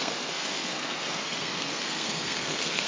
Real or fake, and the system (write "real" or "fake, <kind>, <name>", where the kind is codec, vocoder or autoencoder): fake, codec, SNAC